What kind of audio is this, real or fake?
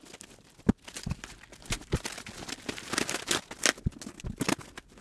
real